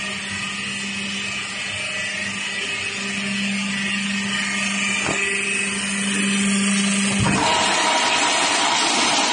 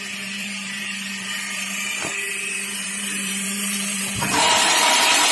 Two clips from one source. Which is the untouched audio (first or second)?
first